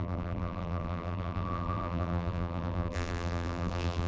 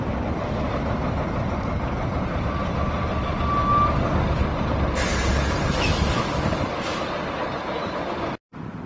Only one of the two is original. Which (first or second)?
second